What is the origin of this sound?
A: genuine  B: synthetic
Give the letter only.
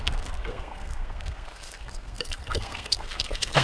B